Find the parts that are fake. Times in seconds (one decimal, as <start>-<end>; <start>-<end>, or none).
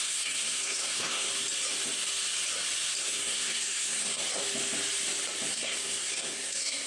0.0-1.3; 3.0-4.2; 5.5-6.9